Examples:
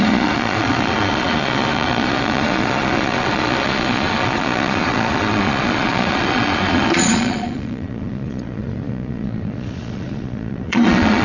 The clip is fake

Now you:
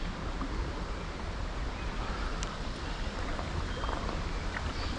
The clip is real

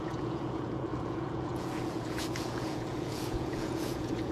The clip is fake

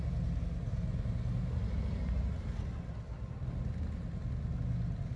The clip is real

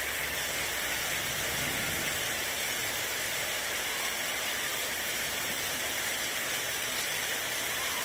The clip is real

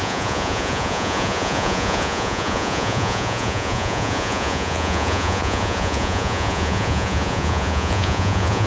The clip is fake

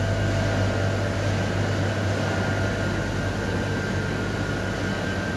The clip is real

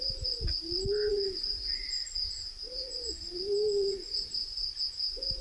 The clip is fake